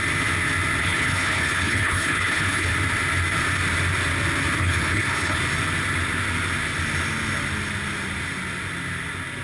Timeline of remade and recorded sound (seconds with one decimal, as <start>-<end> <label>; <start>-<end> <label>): 0.0-0.8 recorded; 0.8-2.7 remade; 2.7-4.6 recorded; 4.6-5.4 remade; 5.4-9.4 recorded